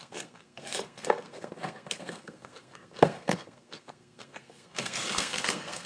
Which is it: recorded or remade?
remade